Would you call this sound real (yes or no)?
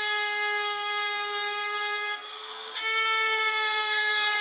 no